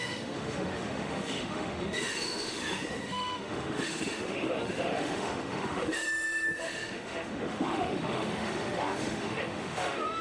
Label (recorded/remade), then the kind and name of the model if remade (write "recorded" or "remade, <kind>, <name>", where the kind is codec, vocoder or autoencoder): remade, autoencoder, DAC-VAE